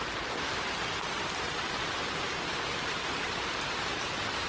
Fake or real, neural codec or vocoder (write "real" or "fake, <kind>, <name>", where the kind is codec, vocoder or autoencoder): real